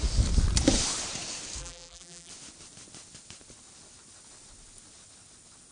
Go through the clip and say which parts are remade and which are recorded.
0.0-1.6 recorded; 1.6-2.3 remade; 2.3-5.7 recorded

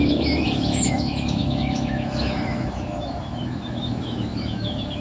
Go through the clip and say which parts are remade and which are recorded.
0.0-5.0 remade

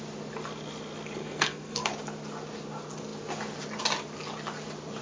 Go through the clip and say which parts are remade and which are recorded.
0.0-1.2 recorded; 1.2-1.9 remade; 1.9-5.0 recorded

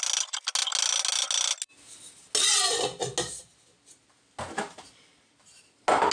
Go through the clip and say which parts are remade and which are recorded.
0.0-6.1 recorded

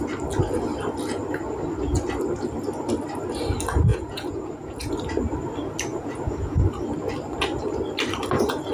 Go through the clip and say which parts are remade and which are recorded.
0.0-3.9 recorded; 3.9-4.9 remade; 4.9-5.9 recorded; 5.9-6.6 remade; 6.6-8.7 recorded

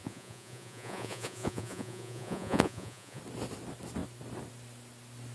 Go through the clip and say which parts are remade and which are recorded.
0.0-3.2 remade; 3.2-5.3 recorded

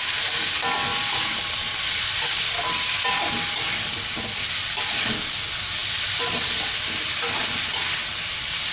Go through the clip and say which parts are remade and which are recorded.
0.0-0.9 recorded; 0.9-3.1 remade; 3.1-8.7 recorded